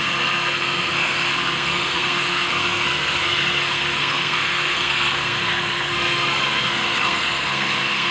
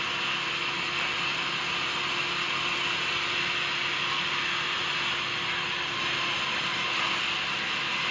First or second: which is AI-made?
first